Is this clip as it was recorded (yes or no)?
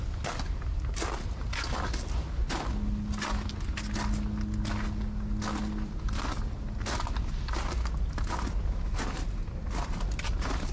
yes